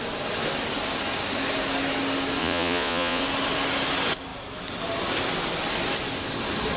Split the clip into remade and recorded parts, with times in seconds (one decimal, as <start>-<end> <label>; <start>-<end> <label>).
0.0-2.4 recorded; 2.4-3.2 remade; 3.2-6.8 recorded